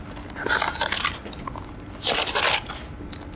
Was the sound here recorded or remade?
recorded